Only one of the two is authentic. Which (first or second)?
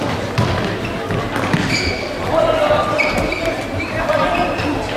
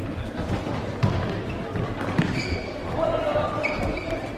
first